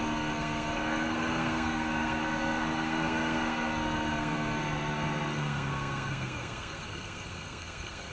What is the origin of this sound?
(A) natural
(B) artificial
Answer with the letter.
B